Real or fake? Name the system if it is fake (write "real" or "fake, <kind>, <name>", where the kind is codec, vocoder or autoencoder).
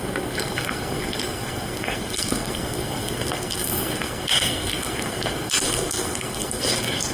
fake, codec, SNAC